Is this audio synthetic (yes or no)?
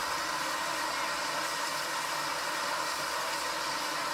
no